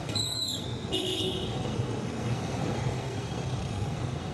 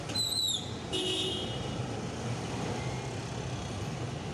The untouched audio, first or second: second